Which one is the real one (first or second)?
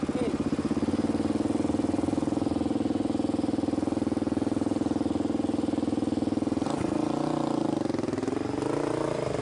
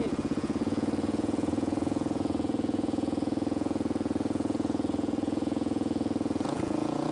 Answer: first